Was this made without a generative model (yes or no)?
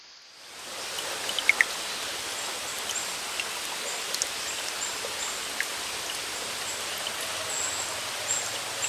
yes